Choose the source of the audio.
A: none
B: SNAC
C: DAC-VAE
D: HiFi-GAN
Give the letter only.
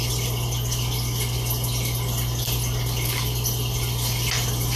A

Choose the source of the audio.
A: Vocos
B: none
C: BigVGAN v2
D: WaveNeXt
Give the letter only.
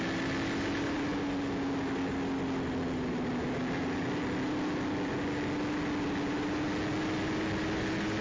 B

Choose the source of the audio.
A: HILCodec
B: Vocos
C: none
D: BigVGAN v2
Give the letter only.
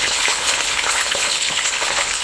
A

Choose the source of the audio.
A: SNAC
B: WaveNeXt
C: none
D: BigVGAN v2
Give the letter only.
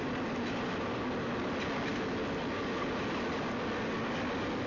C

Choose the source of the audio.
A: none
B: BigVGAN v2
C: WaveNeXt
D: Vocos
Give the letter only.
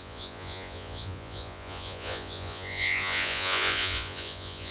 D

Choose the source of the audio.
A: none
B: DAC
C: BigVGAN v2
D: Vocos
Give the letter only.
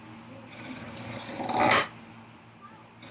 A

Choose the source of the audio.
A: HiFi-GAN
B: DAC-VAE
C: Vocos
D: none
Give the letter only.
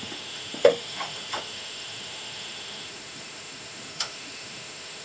B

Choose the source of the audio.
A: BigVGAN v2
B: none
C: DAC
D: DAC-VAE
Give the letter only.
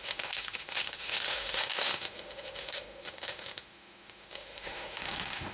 D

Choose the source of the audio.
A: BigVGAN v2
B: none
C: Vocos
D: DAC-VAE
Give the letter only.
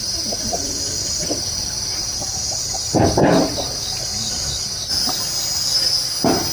B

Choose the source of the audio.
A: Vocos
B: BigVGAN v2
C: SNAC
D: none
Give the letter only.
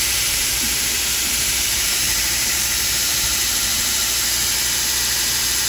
B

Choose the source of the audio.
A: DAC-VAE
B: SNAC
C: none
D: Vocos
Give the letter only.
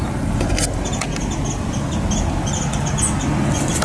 C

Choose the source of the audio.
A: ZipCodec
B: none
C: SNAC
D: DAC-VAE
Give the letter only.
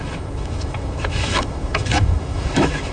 D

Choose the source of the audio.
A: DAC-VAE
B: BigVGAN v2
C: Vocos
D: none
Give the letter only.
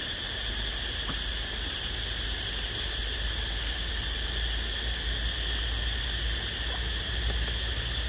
D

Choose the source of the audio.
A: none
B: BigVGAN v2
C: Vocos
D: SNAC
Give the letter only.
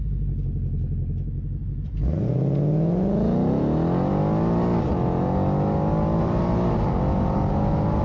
A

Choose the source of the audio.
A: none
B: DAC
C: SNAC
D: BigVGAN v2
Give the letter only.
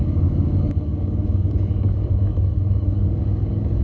B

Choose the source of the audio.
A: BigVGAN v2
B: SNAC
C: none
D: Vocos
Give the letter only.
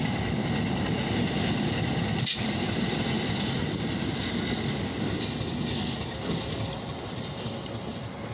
C